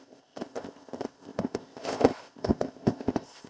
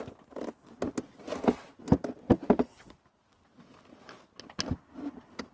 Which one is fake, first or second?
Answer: first